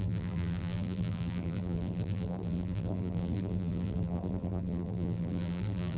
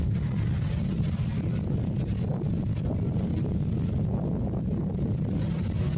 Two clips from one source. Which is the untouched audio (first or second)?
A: second